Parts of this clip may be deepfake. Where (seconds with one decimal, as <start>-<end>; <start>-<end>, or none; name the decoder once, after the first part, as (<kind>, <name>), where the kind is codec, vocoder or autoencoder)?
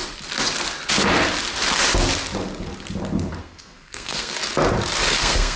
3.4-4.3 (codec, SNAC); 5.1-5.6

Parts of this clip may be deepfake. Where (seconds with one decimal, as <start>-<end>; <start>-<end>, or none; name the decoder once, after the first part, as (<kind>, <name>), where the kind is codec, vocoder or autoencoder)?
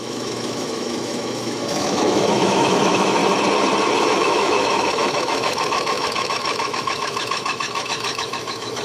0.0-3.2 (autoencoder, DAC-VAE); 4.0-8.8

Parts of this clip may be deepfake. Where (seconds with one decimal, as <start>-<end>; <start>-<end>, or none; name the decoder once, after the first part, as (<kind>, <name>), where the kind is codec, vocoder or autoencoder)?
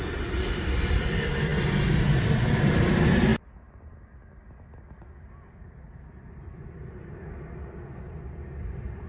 none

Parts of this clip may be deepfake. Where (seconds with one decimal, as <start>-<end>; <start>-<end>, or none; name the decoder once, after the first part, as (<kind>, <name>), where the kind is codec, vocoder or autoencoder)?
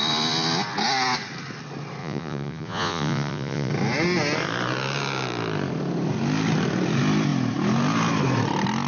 2.0-3.7 (vocoder, Vocos)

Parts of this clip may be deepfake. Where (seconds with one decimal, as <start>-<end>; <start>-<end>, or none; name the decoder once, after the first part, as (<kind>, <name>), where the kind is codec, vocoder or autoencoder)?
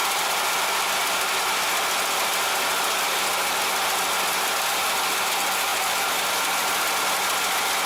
0.0-0.9 (vocoder, BigVGAN v2); 5.7-6.3